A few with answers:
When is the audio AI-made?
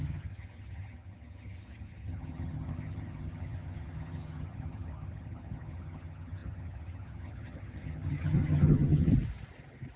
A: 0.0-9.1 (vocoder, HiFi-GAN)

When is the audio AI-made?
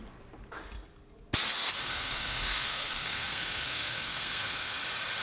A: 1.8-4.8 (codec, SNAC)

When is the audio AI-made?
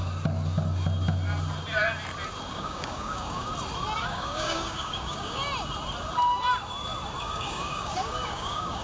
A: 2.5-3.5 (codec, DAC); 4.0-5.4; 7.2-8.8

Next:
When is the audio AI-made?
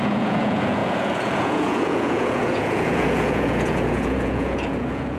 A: 0.0-5.2 (vocoder, Vocos)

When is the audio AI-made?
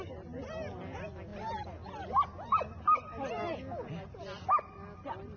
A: none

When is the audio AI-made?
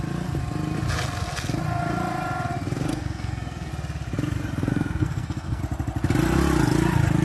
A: 2.9-3.7 (codec, SNAC); 4.7-5.6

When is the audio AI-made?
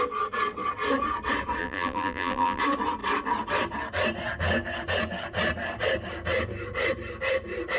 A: 1.6-2.6 (vocoder, BigVGAN v2)